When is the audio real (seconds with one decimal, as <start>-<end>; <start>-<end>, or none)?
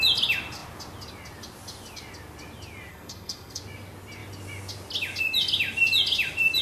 0.0-2.9; 3.6-6.6